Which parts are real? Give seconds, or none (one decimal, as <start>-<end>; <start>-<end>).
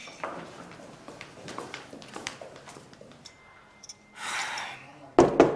3.4-4.4; 5.1-5.6